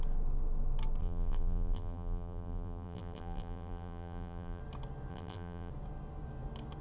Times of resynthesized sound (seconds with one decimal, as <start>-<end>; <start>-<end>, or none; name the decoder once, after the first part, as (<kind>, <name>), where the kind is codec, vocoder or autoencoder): 1.0-4.6 (vocoder, BigVGAN v2); 5.1-5.7